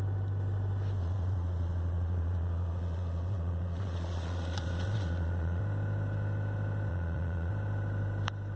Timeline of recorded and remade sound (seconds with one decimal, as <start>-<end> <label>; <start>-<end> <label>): 0.0-1.0 recorded; 1.0-5.6 remade; 5.6-6.9 recorded; 6.9-7.5 remade; 7.5-8.6 recorded